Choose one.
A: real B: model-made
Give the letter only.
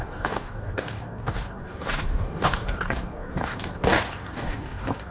B